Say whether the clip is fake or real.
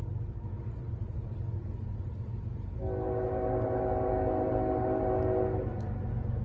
real